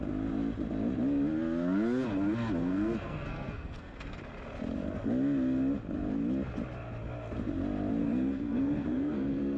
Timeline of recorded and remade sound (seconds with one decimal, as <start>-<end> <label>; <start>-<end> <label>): 0.0-2.6 recorded; 2.6-4.2 remade; 4.2-8.0 recorded; 8.0-9.6 remade